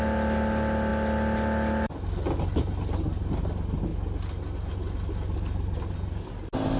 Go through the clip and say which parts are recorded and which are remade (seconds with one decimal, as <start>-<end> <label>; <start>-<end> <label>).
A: 0.0-6.8 recorded